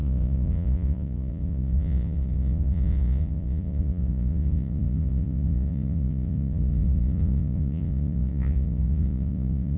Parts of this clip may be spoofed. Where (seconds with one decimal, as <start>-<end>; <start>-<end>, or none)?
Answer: 0.0-9.8

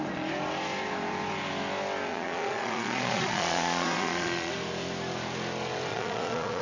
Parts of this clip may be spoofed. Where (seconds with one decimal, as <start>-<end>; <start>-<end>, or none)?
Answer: 2.1-4.5; 5.9-6.6

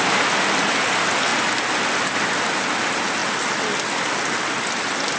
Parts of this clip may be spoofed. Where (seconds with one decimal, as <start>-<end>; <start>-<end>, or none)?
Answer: none

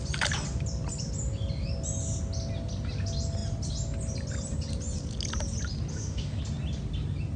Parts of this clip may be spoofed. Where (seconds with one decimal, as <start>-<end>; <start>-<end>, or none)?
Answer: 5.9-6.4

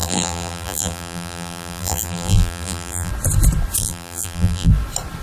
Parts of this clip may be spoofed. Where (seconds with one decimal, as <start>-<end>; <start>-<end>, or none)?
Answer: 0.0-3.1; 3.8-4.7

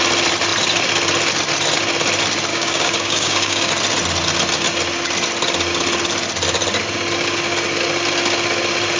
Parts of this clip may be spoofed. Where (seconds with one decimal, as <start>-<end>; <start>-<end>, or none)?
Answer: 2.5-3.7

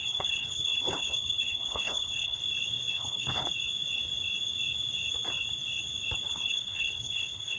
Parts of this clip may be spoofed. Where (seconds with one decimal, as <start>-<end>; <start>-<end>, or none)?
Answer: 0.0-2.4; 2.9-3.5; 6.3-7.6